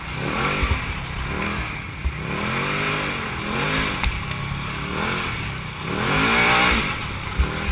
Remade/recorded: recorded